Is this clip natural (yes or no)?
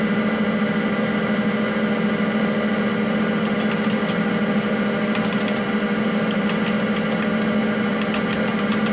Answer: yes